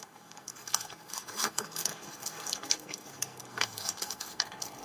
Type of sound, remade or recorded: remade